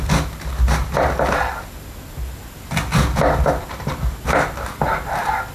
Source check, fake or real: real